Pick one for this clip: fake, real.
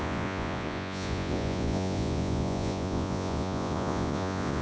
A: fake